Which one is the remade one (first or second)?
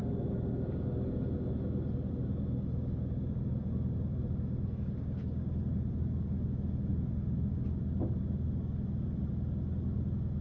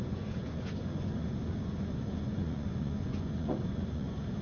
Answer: second